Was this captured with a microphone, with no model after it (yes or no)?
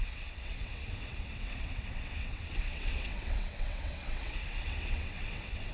no